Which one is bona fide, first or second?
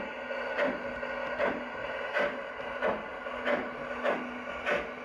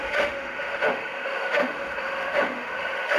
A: first